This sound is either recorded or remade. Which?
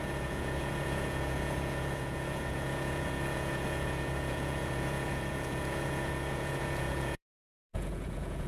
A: remade